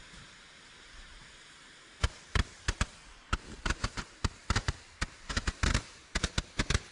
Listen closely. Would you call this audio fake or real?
fake